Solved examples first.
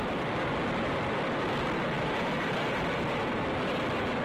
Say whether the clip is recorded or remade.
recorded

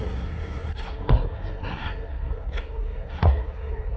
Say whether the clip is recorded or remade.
remade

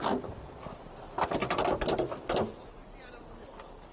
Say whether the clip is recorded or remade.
recorded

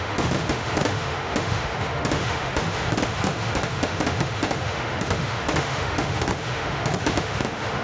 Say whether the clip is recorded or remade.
remade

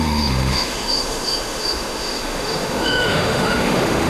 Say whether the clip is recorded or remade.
remade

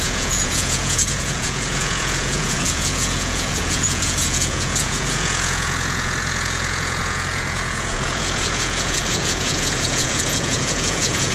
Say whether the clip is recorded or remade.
remade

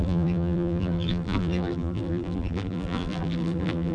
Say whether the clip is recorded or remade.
remade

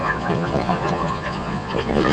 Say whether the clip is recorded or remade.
remade